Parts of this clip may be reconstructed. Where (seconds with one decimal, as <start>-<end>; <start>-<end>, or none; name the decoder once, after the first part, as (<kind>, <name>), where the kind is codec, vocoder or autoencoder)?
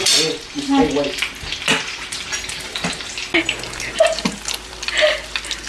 none